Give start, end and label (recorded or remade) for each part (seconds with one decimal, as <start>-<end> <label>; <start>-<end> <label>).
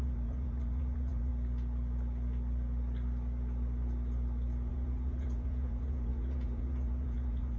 0.0-1.3 remade; 1.3-4.7 recorded; 4.7-7.6 remade